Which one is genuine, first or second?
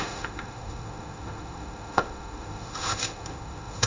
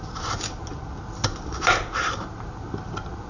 second